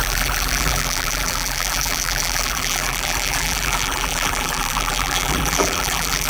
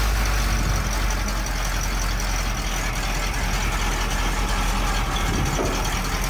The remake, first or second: first